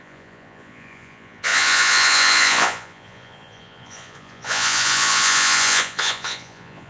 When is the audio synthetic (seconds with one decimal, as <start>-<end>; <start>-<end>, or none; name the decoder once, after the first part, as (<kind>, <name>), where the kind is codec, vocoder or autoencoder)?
0.0-6.9 (vocoder, Vocos)

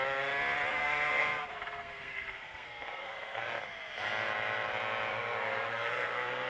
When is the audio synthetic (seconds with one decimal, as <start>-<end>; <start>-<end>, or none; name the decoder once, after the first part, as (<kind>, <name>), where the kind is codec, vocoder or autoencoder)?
0.7-3.5 (codec, SNAC); 5.1-6.5

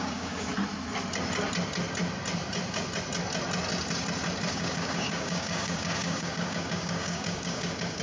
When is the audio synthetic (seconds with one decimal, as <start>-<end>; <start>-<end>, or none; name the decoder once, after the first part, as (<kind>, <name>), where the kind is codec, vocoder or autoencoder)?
0.0-0.5 (codec, DAC); 4.5-8.0

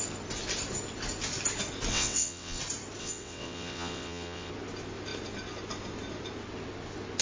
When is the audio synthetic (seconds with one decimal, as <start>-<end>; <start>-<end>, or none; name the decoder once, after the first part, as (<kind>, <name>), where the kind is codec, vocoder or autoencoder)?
1.9-2.6 (vocoder, WaveNeXt); 3.0-4.5

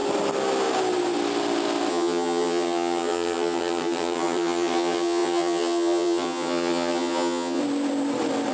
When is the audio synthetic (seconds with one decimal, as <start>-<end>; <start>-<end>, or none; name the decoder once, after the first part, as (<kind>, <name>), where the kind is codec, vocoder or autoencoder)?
1.9-7.6 (vocoder, HiFi-GAN)